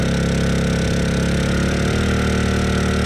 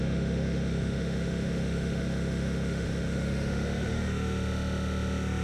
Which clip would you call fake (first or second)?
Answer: second